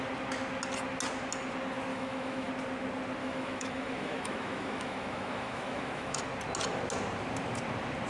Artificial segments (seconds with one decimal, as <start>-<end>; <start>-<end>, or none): 1.9-2.5; 3.2-6.2